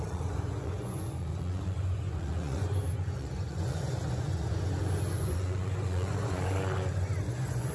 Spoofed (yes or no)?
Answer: yes